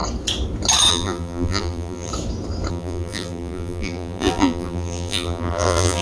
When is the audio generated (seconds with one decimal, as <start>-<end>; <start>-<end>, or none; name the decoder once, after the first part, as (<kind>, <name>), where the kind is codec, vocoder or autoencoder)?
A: 0.9-2.1 (vocoder, BigVGAN v2); 2.7-6.0